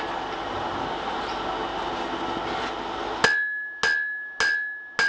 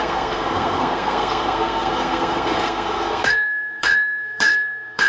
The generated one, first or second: second